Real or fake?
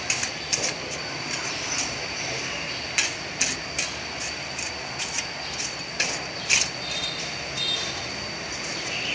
real